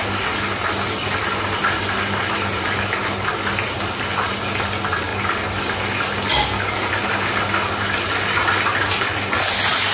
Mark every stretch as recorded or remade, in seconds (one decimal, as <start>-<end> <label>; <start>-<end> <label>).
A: 0.0-9.9 recorded